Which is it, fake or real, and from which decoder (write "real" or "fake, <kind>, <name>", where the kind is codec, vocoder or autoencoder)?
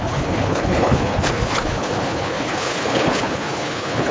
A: fake, codec, HILCodec